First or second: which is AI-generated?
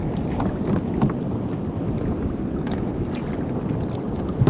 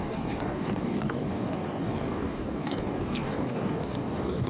second